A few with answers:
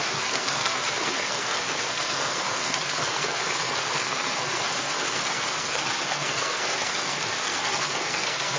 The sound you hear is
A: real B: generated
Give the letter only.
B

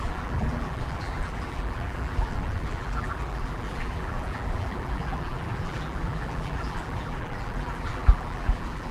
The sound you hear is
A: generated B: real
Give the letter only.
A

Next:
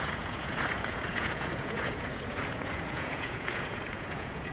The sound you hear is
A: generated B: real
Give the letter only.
A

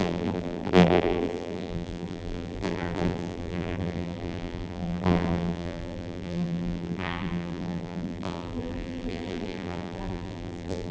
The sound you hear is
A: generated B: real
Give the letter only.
A